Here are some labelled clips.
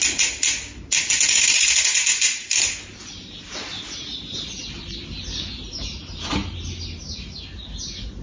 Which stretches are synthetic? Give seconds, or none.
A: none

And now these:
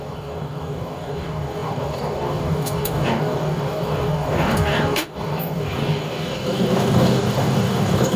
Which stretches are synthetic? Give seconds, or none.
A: 0.0-8.2

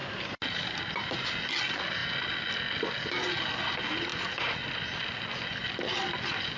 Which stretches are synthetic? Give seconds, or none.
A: none

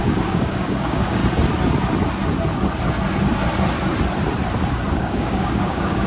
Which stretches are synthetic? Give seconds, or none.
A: 0.0-1.2; 4.9-6.1